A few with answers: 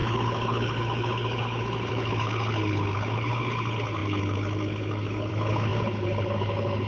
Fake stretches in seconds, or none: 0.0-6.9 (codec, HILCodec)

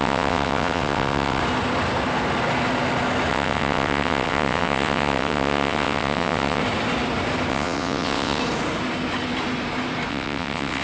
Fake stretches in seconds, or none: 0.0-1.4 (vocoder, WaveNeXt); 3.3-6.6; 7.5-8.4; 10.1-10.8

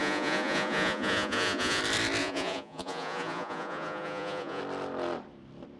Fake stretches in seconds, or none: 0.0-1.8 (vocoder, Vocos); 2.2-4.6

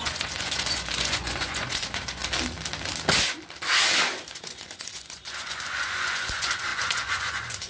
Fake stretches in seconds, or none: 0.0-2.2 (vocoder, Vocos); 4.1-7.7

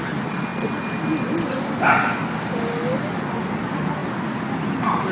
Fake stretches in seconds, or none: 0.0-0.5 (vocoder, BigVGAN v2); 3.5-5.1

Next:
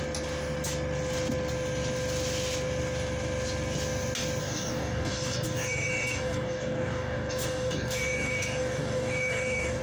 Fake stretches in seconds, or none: 4.4-9.8 (codec, DAC)

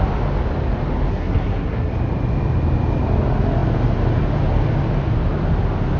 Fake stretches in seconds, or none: 1.1-1.9 (codec, SNAC)

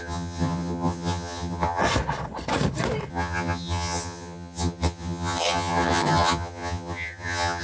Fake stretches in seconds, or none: 0.0-1.8 (vocoder, HiFi-GAN); 3.1-7.6